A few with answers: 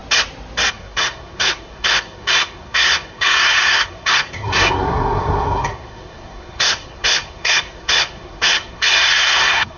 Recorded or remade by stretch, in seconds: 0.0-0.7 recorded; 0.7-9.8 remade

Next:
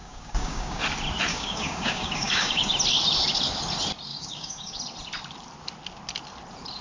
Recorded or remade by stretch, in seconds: 0.0-0.8 remade; 0.8-1.3 recorded; 1.3-2.7 remade; 2.7-4.1 recorded; 4.1-4.8 remade; 4.8-6.8 recorded

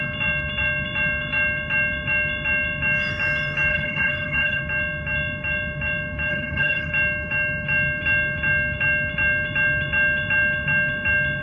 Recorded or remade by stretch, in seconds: 0.0-3.7 recorded; 3.7-4.6 remade; 4.6-6.3 recorded; 6.3-6.9 remade; 6.9-11.4 recorded

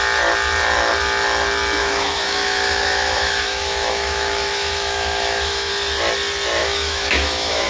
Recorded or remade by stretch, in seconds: 0.0-1.8 recorded; 1.8-5.7 remade; 5.7-6.6 recorded; 6.6-7.7 remade

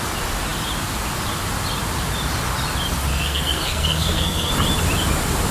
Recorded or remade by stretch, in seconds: 0.0-3.1 recorded; 3.1-4.5 remade; 4.5-5.5 recorded

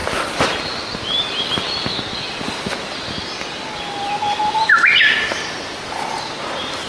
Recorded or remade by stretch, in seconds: 0.0-6.9 recorded